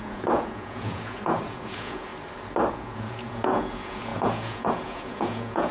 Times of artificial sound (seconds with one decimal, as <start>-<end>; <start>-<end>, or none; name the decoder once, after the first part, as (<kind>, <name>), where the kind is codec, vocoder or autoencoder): 0.0-2.1 (vocoder, Vocos); 2.7-5.7